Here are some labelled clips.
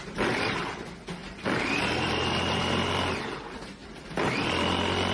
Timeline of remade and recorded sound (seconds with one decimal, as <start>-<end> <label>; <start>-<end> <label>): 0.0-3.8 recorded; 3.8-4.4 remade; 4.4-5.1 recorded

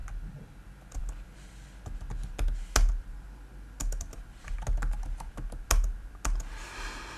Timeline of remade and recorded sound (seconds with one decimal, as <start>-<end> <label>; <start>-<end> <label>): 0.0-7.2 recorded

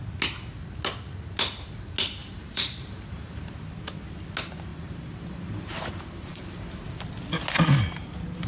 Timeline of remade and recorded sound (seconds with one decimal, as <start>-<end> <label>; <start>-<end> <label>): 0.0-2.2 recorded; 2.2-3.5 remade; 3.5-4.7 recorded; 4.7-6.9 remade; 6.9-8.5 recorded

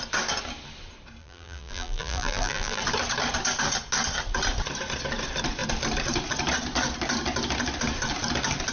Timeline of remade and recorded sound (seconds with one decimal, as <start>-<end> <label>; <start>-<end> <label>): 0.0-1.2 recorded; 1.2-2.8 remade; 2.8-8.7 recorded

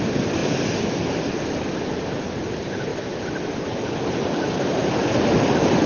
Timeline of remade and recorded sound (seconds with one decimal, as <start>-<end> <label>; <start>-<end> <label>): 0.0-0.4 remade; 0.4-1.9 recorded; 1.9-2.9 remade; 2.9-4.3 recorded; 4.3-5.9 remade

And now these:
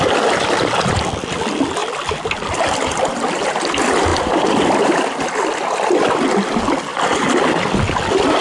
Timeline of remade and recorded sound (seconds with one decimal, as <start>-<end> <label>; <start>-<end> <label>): 0.0-8.4 recorded